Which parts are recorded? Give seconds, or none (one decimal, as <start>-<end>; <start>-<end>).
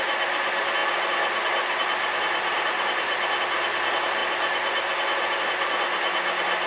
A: 0.0-6.7